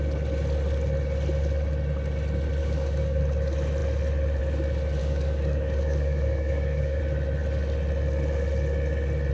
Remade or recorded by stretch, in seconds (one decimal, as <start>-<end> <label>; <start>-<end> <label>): 0.0-2.6 recorded; 2.6-3.2 remade; 3.2-5.0 recorded; 5.0-7.0 remade; 7.0-9.3 recorded